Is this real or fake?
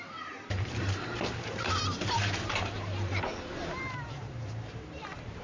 fake